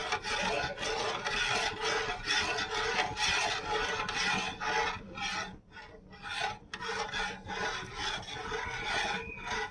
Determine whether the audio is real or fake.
real